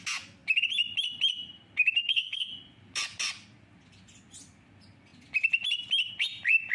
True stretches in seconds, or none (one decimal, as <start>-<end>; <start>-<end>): 0.0-2.0; 2.5-6.7